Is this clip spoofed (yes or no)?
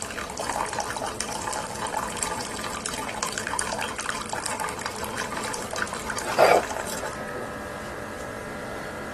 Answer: yes